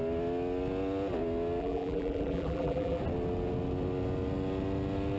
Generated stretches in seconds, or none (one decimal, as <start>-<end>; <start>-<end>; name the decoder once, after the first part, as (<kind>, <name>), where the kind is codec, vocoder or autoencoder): 1.6-3.0 (vocoder, BigVGAN v2)